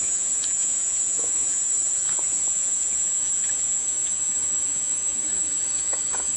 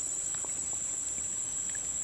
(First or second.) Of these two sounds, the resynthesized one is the first